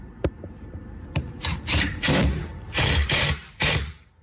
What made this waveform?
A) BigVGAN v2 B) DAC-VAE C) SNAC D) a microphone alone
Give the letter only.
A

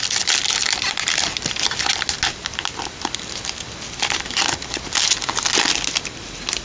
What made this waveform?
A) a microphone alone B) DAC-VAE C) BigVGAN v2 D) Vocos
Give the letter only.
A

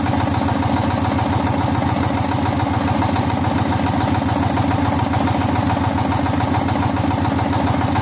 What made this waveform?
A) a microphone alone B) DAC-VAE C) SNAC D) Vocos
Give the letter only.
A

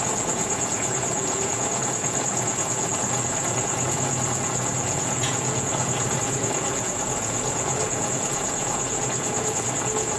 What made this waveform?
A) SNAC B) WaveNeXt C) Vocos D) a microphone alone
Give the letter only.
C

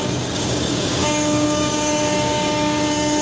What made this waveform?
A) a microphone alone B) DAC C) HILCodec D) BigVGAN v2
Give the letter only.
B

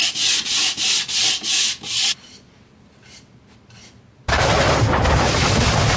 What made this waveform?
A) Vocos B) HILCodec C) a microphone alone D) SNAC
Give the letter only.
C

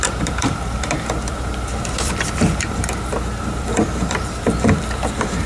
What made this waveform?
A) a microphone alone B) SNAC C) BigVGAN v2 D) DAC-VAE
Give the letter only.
C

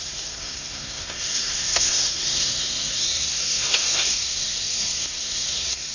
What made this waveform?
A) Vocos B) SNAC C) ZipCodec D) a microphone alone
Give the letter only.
B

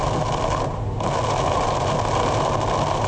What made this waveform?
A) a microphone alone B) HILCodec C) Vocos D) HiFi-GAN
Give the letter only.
A